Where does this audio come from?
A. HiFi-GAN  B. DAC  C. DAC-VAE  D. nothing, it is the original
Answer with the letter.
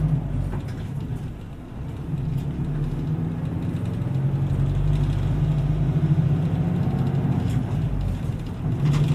D